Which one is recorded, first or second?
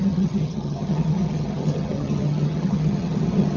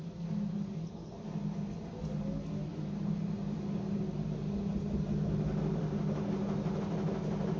second